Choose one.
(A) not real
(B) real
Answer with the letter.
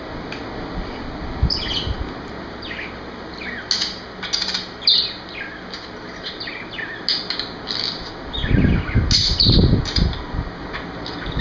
B